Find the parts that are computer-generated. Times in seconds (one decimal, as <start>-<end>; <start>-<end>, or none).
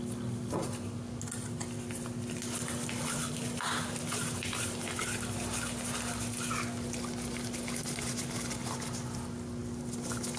none